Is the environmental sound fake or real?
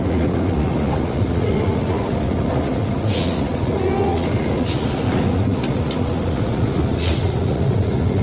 fake